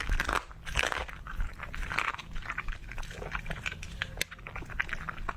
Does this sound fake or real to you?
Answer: real